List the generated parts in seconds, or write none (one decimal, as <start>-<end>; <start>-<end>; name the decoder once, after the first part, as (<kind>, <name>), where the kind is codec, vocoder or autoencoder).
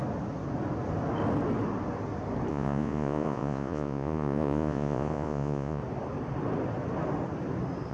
2.5-5.8 (vocoder, Vocos)